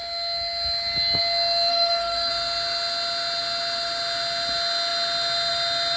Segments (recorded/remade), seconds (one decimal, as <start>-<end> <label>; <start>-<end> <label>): 0.0-1.7 recorded; 1.7-2.3 remade; 2.3-6.0 recorded